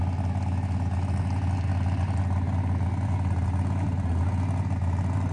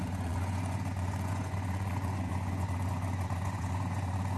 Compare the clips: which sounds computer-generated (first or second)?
second